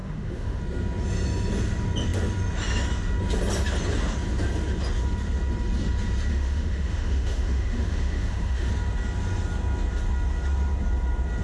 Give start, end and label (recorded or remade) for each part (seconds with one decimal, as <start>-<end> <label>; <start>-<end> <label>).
0.0-0.6 remade; 0.6-6.3 recorded; 6.3-8.7 remade; 8.7-11.4 recorded